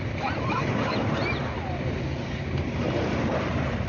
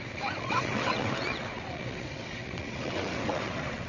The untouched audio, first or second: first